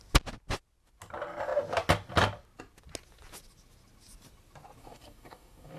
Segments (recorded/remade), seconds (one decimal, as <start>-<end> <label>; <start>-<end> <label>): 0.0-4.8 recorded; 4.8-5.8 remade